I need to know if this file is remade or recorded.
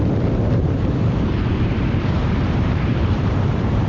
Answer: remade